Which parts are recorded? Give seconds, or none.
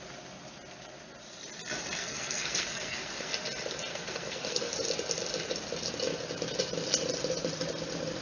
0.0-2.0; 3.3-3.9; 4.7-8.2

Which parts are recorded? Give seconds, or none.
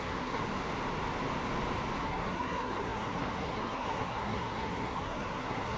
0.4-2.0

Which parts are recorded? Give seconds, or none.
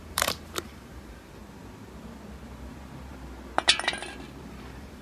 1.4-4.4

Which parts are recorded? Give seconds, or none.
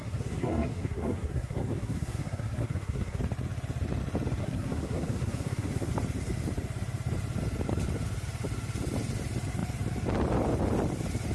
3.2-4.4; 5.9-11.3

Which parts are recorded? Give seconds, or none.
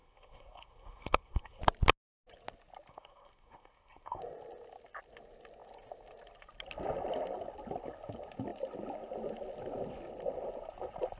1.6-2.9; 4.2-11.2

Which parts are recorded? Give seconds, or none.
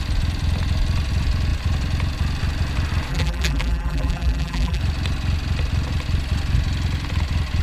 0.0-3.1; 4.8-7.6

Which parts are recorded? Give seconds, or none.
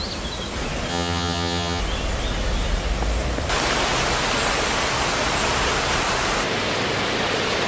0.0-0.9; 1.8-7.7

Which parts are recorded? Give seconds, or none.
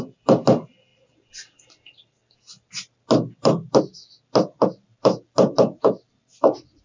0.0-6.8